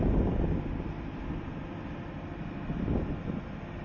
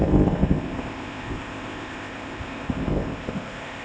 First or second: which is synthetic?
second